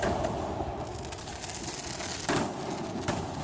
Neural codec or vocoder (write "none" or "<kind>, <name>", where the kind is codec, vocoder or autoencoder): none